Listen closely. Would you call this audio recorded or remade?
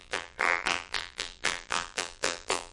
remade